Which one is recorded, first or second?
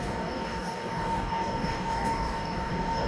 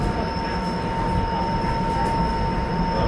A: second